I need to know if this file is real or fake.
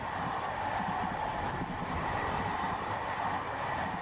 real